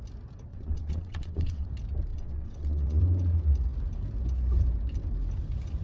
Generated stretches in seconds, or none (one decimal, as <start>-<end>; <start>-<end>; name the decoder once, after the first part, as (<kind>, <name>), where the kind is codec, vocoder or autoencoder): 0.5-1.7 (vocoder, WaveNeXt); 2.1-3.0